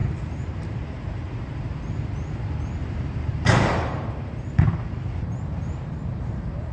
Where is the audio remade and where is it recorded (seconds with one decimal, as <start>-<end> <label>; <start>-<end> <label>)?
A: 0.0-1.8 remade; 1.8-2.8 recorded; 2.8-6.7 remade